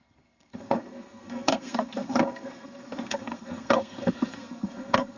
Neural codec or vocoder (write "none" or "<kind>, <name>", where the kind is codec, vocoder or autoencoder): codec, SNAC